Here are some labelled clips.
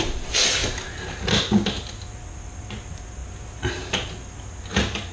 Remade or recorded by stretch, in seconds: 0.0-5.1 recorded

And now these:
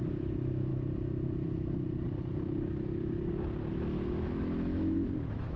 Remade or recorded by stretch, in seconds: 0.0-0.7 remade; 0.7-3.7 recorded; 3.7-5.6 remade

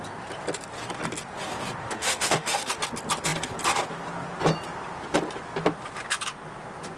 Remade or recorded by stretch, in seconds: 0.0-1.8 recorded; 1.8-2.8 remade; 2.8-7.0 recorded

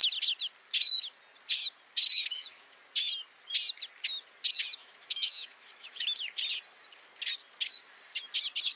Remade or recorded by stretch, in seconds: 0.0-2.1 recorded; 2.1-2.7 remade; 2.7-4.8 recorded; 4.8-6.4 remade; 6.4-8.8 recorded

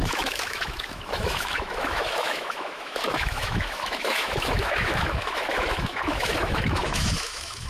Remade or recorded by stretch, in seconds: 0.0-7.7 remade

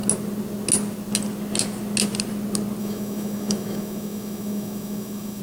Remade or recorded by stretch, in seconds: 0.0-2.8 recorded; 2.8-5.4 remade

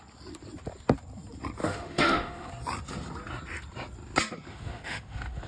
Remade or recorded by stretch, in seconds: 0.0-1.6 recorded; 1.6-2.5 remade; 2.5-4.5 recorded; 4.5-5.5 remade

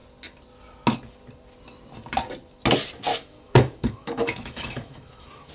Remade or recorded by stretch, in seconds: 0.0-3.1 recorded; 3.1-5.5 remade